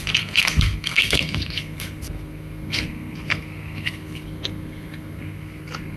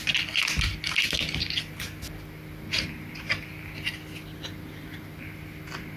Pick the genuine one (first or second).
second